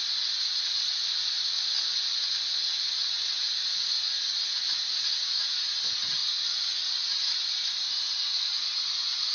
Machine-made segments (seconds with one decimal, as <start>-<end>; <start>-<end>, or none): none